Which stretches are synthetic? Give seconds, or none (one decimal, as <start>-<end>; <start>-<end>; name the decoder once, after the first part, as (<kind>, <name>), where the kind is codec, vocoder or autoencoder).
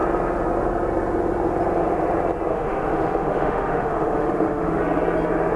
2.5-4.8 (autoencoder, DAC-VAE)